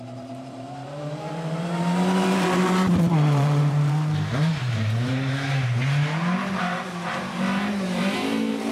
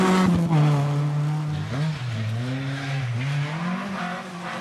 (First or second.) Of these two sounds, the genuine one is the second